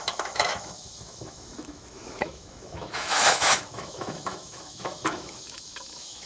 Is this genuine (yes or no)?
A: no